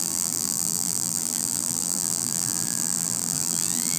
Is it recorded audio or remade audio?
remade